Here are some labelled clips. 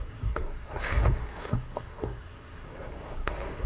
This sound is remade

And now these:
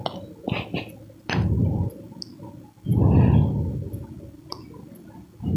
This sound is recorded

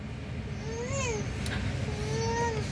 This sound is recorded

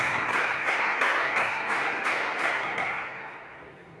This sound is remade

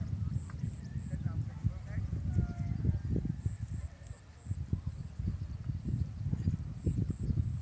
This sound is recorded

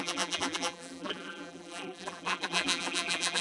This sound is remade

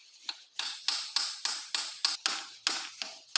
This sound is recorded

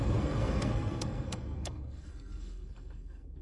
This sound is remade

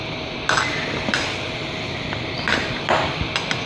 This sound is recorded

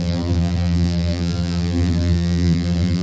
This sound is remade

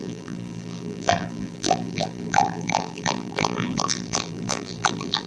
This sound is remade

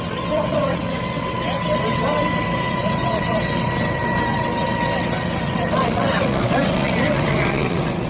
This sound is remade